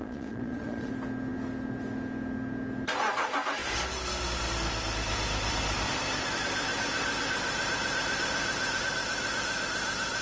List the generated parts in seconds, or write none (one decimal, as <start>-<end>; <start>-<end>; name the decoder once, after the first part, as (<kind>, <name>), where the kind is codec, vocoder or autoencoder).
0.0-0.9 (vocoder, Vocos)